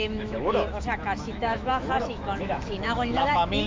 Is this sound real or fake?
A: fake